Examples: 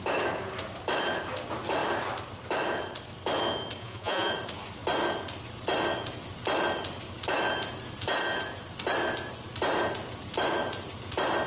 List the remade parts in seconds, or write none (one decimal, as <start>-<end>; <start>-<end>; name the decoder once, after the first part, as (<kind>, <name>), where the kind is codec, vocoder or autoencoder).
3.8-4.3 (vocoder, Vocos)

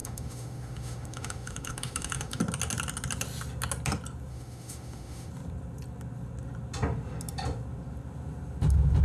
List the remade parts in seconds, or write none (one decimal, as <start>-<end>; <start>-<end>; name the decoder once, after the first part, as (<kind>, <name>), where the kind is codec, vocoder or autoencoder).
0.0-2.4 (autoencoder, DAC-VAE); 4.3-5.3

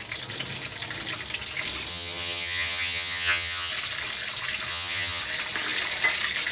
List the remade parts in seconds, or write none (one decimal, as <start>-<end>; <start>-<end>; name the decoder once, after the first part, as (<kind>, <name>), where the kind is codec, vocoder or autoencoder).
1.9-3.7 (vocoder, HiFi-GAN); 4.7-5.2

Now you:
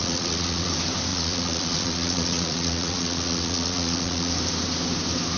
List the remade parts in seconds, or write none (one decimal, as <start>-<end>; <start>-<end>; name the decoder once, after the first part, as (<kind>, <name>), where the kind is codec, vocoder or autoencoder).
0.0-0.7 (vocoder, Vocos); 1.1-4.3